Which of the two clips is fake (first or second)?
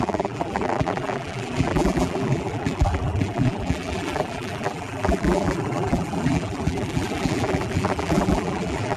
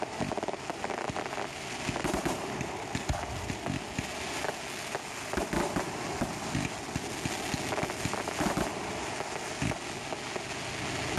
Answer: first